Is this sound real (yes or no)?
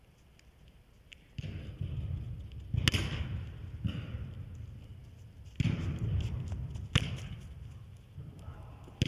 yes